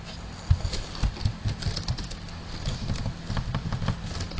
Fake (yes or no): no